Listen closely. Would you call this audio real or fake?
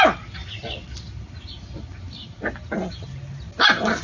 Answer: real